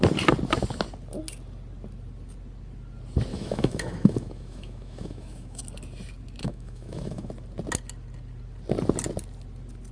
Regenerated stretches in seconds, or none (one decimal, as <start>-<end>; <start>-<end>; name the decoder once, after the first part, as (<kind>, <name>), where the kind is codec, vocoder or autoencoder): 3.3-5.6 (autoencoder, DAC-VAE); 6.4-7.3